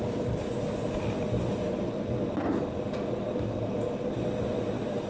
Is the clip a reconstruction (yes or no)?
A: no